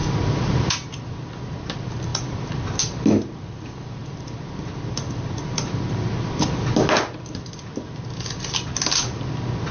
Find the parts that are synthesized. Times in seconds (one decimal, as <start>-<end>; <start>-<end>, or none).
0.0-0.7; 2.1-2.6; 4.0-6.5